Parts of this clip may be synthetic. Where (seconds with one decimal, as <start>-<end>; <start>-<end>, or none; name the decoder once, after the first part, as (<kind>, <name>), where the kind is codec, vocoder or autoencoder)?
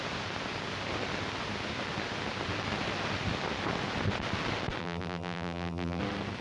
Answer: 4.8-6.0 (vocoder, BigVGAN v2)